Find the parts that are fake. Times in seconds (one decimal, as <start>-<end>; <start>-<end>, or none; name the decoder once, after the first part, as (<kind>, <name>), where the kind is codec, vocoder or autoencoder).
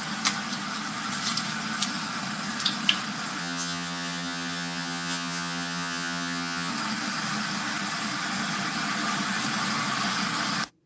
3.4-6.7 (vocoder, HiFi-GAN)